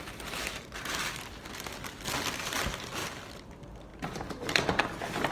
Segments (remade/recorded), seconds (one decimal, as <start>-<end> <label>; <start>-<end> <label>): 0.0-1.1 remade; 1.1-3.9 recorded; 3.9-4.8 remade; 4.8-5.3 recorded